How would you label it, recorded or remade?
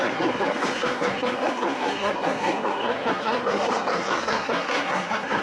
remade